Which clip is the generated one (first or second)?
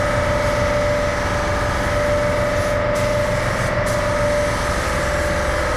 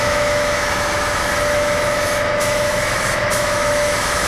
second